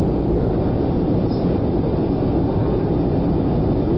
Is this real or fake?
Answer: real